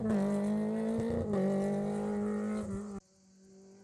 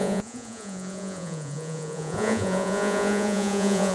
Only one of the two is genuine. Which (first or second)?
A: first